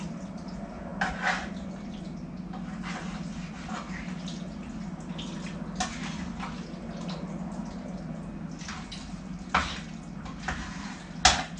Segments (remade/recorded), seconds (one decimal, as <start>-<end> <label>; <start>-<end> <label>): 0.0-11.6 recorded